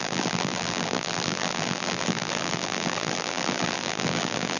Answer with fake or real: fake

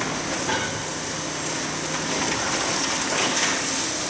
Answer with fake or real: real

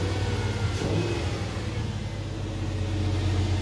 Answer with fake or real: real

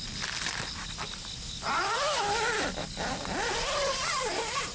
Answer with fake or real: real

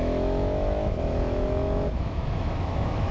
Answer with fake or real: fake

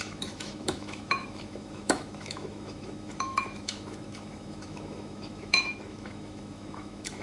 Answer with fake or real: fake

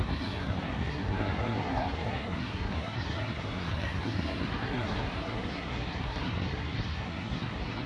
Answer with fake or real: fake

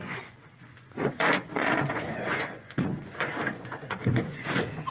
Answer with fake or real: fake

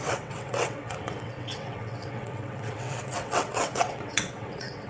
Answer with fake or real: fake